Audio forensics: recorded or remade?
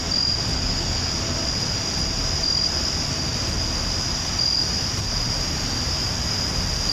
recorded